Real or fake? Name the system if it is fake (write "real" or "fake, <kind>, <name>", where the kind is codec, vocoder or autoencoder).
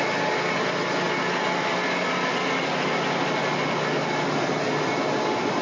real